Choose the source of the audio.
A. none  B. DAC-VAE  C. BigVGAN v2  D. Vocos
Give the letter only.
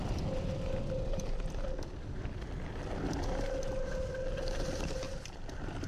A